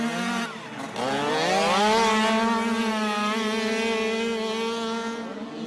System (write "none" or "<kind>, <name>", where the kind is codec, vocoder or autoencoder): none